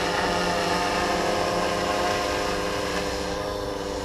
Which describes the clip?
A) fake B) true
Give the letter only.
B